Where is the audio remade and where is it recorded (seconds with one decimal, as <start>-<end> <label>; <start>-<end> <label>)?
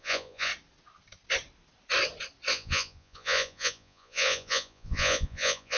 0.0-0.5 remade; 0.5-2.5 recorded; 2.5-5.8 remade